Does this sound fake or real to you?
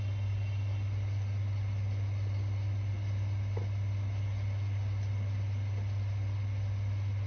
real